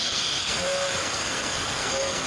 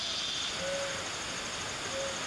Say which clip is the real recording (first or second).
second